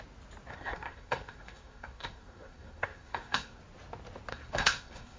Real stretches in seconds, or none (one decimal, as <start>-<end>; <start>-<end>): 0.0-0.5; 3.6-4.3